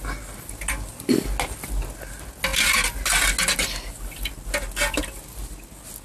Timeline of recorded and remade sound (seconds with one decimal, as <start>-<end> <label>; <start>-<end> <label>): 0.0-6.0 recorded